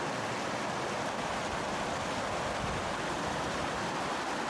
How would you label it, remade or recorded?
recorded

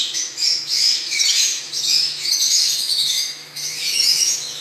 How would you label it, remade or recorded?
remade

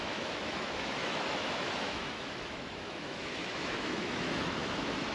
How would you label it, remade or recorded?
remade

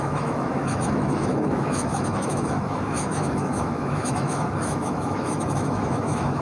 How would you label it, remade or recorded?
remade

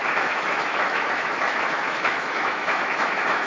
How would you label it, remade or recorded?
remade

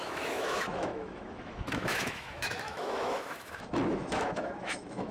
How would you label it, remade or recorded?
remade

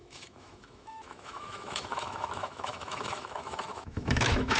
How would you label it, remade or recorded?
remade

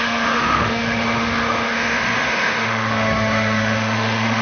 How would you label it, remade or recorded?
remade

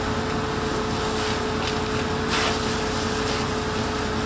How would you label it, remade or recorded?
recorded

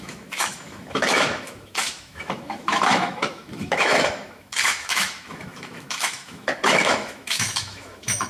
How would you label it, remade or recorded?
remade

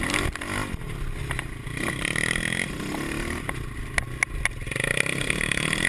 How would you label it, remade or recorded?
recorded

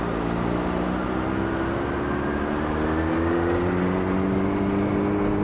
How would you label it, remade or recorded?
recorded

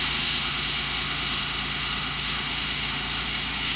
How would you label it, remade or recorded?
remade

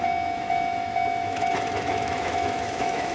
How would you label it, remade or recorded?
remade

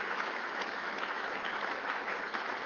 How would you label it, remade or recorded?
remade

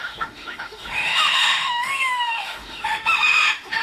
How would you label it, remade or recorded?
remade